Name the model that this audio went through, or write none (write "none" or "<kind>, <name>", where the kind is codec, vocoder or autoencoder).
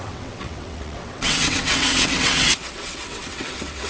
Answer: vocoder, WaveNeXt